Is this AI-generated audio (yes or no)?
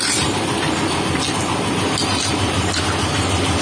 no